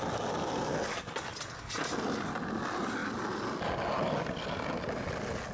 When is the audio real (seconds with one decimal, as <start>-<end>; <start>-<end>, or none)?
0.0-5.5